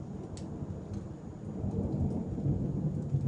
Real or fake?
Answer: real